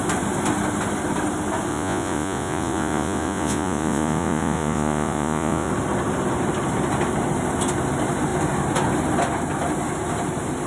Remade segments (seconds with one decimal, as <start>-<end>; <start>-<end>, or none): 1.7-5.7

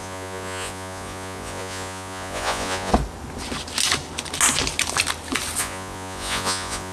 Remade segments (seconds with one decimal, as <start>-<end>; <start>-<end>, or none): 0.0-2.9; 5.6-6.9

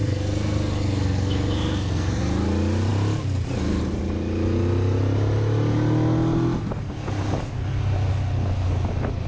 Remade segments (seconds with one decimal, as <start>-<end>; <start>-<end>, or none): 0.0-2.2

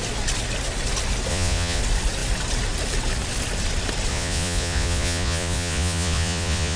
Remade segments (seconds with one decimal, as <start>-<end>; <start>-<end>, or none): 1.3-1.8; 4.1-6.8

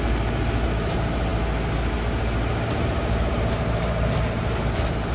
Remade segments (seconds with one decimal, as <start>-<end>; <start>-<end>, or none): none

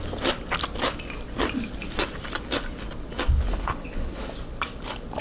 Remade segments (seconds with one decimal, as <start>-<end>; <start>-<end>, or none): 3.5-4.2

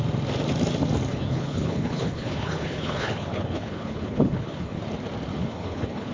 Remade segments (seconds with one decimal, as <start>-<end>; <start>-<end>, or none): 1.1-4.8; 5.3-6.1

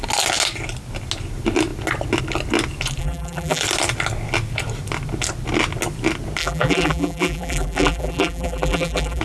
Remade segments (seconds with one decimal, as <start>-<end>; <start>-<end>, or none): 3.0-3.6; 6.4-9.2